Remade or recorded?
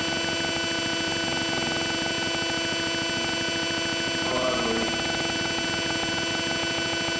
recorded